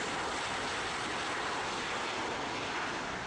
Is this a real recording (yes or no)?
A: yes